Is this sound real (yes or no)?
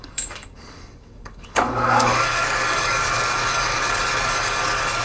no